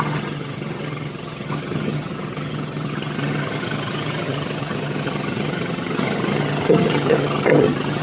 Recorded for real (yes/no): no